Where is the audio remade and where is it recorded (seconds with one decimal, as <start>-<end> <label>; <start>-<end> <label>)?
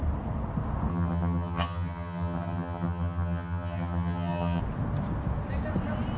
0.0-0.9 recorded; 0.9-4.6 remade; 4.6-6.2 recorded